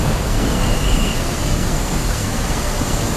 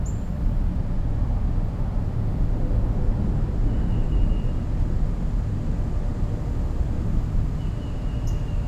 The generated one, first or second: first